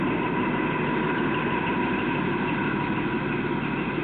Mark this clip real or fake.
real